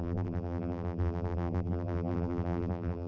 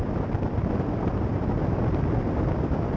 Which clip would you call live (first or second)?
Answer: second